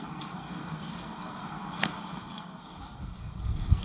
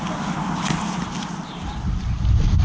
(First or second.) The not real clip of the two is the first